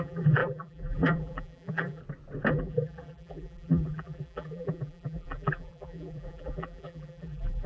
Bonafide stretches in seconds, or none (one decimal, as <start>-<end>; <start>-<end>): 2.0-2.5